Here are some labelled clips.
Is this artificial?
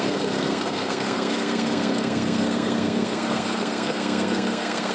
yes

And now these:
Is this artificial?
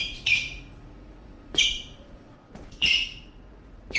yes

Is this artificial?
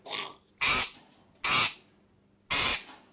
no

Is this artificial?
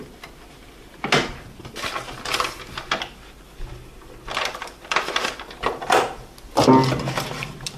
no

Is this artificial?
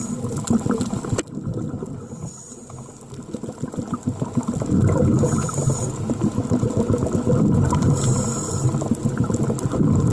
no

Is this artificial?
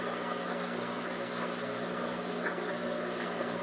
yes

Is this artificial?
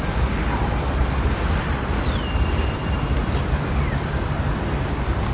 yes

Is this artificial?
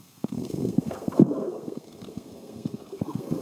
yes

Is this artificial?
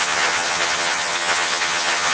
yes